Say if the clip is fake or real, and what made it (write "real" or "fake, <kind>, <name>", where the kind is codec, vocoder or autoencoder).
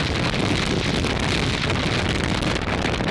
real